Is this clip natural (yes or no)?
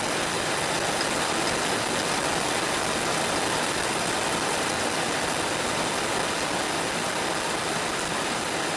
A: yes